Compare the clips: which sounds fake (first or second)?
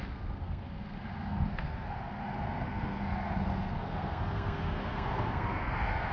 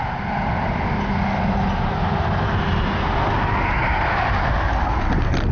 first